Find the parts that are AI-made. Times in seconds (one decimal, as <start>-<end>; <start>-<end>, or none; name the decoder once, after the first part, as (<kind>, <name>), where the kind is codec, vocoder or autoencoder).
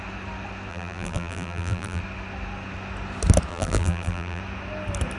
0.7-2.0 (vocoder, BigVGAN v2); 3.5-4.4